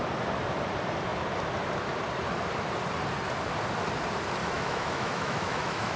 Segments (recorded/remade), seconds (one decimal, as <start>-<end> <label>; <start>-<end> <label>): 0.0-4.4 recorded; 4.4-6.0 remade